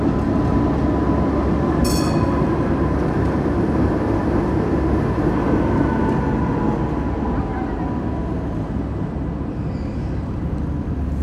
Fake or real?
real